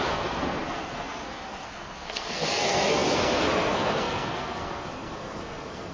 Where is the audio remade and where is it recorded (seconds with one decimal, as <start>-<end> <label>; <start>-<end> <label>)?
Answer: 0.0-5.9 remade